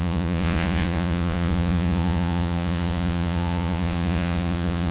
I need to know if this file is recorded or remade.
remade